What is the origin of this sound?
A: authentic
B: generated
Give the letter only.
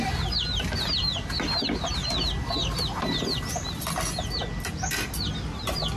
A